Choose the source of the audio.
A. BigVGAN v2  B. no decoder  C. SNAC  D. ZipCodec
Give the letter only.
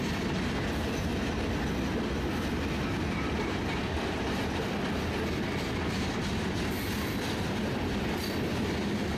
A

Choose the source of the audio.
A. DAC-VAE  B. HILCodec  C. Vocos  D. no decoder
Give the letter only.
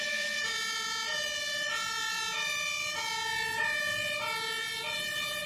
D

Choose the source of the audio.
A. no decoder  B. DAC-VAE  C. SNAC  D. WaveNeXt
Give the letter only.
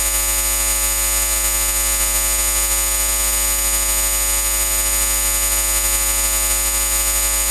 A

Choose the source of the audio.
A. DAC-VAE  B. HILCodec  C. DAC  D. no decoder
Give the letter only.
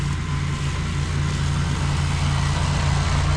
D